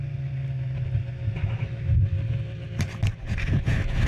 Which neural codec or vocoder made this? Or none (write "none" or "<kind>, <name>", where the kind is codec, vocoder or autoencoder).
none